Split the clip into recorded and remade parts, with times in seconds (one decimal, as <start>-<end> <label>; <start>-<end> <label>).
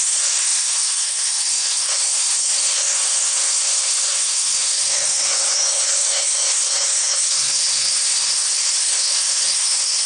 0.0-10.1 remade